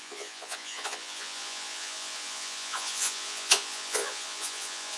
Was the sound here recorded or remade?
remade